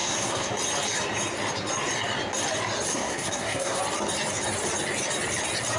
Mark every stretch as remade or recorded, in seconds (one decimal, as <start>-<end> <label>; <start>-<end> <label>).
0.0-0.5 remade; 0.5-2.9 recorded; 2.9-3.8 remade; 3.8-5.8 recorded